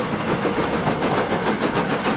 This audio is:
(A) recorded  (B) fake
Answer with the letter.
A